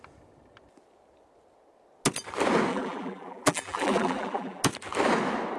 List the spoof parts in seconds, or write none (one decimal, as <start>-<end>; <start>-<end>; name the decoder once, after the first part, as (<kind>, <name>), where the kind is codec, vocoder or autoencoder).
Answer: 2.7-4.6 (vocoder, BigVGAN v2)